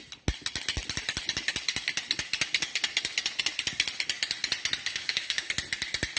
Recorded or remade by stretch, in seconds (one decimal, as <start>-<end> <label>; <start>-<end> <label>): 0.0-4.9 recorded; 4.9-5.5 remade; 5.5-6.2 recorded